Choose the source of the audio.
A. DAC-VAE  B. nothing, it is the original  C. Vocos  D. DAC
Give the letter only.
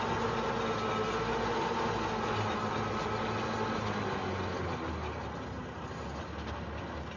B